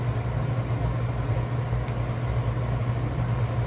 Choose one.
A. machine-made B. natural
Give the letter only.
B